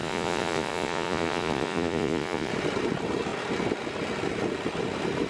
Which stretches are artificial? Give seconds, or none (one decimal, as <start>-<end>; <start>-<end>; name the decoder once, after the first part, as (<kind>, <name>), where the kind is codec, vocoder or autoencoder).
0.0-2.5 (vocoder, Vocos)